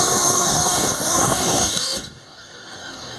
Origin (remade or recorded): remade